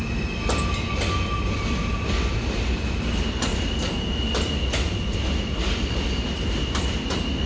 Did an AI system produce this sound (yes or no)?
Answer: no